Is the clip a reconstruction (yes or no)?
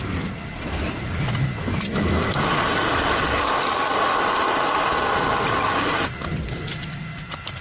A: no